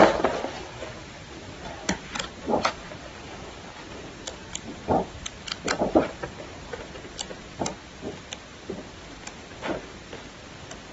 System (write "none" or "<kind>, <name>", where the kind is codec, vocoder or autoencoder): none